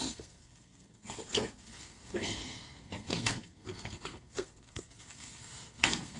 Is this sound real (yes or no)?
no